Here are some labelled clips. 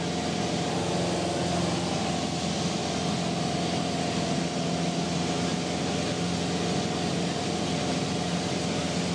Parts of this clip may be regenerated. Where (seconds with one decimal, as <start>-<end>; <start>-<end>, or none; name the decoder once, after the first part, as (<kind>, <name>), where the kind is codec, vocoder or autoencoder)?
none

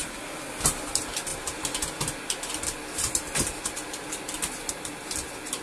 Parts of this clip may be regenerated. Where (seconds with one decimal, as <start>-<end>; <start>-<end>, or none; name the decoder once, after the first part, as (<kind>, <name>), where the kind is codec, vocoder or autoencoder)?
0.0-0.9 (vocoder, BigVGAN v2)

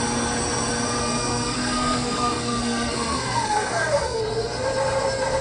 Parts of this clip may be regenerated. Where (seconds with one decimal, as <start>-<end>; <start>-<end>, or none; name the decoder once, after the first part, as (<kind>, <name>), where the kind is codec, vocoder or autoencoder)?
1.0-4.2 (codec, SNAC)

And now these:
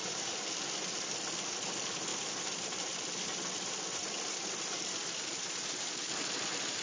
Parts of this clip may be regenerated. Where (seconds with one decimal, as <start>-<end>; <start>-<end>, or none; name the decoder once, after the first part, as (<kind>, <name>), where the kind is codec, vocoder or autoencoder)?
2.1-5.6 (vocoder, BigVGAN v2)